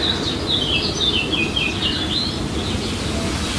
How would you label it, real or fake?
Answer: real